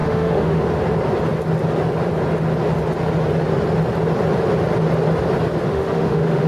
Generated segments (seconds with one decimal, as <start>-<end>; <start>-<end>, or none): 0.0-0.6; 5.7-6.5